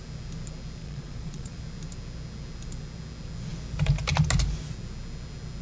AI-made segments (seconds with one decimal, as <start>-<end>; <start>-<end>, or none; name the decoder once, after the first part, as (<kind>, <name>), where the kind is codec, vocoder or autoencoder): 0.8-1.6 (vocoder, Vocos)